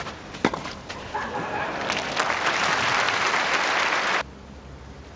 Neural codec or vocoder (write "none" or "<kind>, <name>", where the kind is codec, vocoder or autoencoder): none